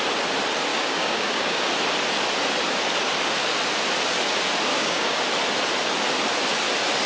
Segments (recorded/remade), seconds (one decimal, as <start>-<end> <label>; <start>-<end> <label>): 0.0-0.7 recorded; 0.7-1.7 remade; 1.7-4.7 recorded; 4.7-5.2 remade; 5.2-7.1 recorded

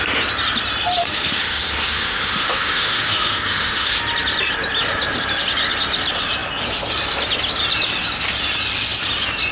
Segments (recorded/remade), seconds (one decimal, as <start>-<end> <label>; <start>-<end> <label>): 0.0-1.0 recorded; 1.0-4.0 remade; 4.0-9.5 recorded

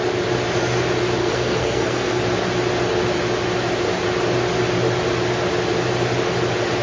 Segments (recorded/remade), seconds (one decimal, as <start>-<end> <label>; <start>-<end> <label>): 0.0-1.2 recorded; 1.2-2.2 remade; 2.2-6.8 recorded

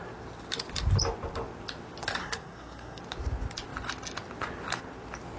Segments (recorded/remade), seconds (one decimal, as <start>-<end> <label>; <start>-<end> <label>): 0.0-2.2 recorded; 2.2-3.0 remade; 3.0-5.4 recorded